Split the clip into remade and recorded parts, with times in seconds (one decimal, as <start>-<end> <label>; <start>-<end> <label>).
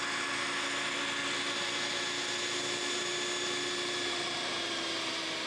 0.0-5.5 recorded